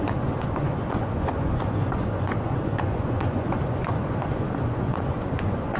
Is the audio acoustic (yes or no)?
no